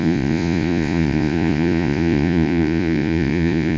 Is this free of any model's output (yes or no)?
no